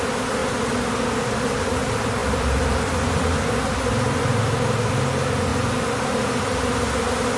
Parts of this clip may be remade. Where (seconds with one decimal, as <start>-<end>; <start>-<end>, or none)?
2.2-5.0